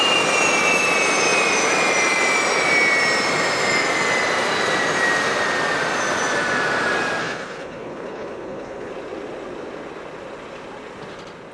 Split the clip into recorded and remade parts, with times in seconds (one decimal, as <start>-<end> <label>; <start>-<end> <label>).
0.0-7.2 recorded; 7.2-8.9 remade; 8.9-11.5 recorded